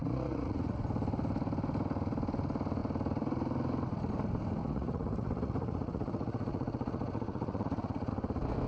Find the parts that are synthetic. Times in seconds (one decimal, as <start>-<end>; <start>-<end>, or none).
0.0-0.8; 4.6-8.1